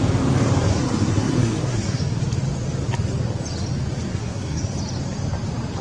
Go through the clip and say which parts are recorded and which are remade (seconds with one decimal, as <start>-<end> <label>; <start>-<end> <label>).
0.0-0.7 recorded; 0.7-2.0 remade; 2.0-4.1 recorded; 4.1-4.6 remade; 4.6-5.8 recorded